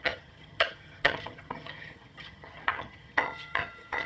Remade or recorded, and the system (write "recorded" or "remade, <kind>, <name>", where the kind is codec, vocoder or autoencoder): remade, vocoder, HiFi-GAN